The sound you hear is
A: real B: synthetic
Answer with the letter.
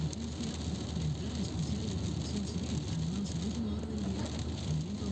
A